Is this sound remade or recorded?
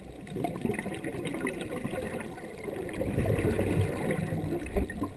recorded